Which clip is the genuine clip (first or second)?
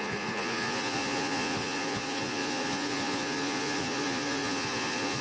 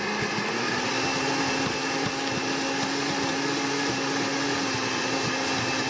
second